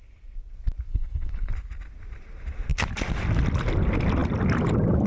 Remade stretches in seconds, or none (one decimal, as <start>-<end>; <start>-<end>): 0.9-1.5